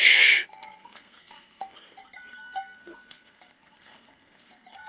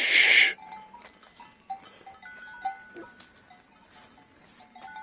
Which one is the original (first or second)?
second